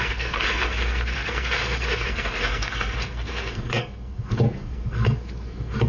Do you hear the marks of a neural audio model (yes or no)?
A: yes